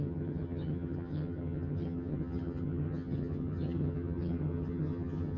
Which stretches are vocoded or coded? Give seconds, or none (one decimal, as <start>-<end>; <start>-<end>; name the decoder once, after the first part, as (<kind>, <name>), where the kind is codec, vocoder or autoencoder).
0.0-5.4 (vocoder, HiFi-GAN)